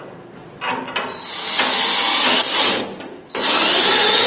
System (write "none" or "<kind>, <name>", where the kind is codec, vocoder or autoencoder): none